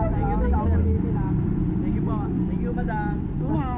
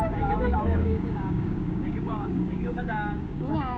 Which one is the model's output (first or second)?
second